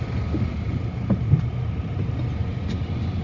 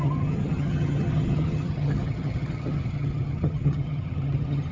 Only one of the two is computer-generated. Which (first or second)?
second